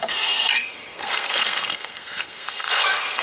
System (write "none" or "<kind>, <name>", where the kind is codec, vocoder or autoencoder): codec, SNAC